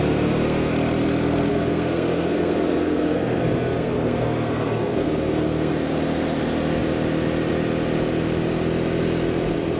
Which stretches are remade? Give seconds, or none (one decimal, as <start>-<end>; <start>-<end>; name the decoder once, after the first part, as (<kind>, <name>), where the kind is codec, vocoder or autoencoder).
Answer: 0.0-0.7 (codec, SNAC); 1.5-5.7